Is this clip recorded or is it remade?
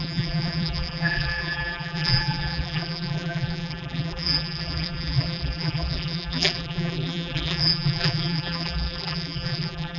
remade